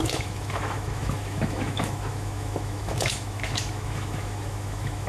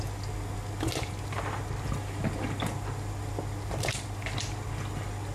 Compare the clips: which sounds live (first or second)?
second